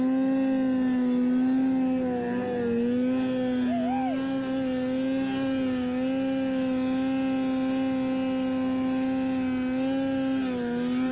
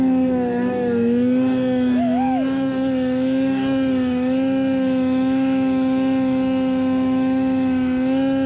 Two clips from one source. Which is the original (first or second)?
first